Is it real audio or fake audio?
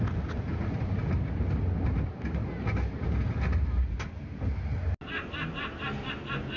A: real